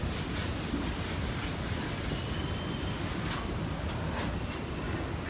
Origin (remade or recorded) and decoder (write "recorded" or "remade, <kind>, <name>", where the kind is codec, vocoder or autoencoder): recorded